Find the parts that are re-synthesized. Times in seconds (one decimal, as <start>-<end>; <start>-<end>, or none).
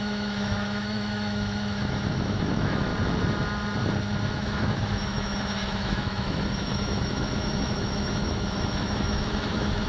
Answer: 0.0-2.9; 4.3-9.9